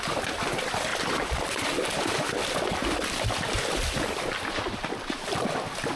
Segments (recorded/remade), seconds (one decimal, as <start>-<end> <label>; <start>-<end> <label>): 0.0-6.0 recorded